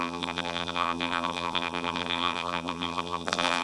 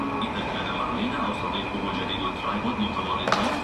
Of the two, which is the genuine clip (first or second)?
second